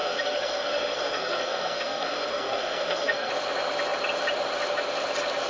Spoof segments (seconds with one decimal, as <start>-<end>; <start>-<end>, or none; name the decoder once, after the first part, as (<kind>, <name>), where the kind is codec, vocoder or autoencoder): 0.0-3.3 (codec, SNAC)